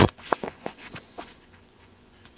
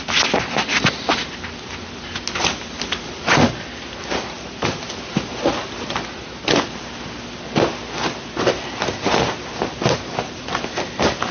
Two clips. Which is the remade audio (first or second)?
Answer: first